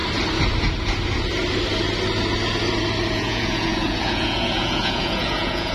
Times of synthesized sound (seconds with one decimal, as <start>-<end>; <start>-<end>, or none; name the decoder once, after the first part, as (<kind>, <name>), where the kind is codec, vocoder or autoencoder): 3.1-5.7 (vocoder, Vocos)